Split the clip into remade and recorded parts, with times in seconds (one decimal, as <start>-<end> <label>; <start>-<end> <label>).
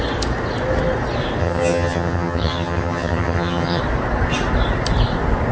0.0-1.4 recorded; 1.4-3.8 remade; 3.8-5.5 recorded